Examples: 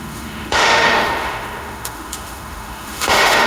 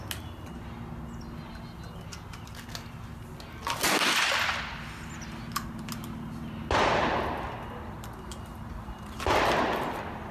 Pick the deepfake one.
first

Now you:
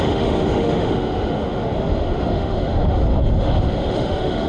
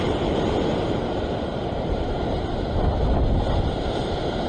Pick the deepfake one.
first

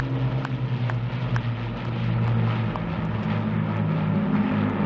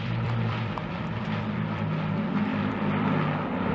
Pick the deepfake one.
second